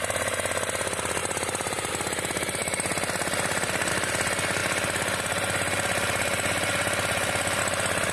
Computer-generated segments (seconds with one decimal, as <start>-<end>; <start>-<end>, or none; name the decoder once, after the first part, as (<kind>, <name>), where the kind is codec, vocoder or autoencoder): 1.2-1.9 (vocoder, BigVGAN v2)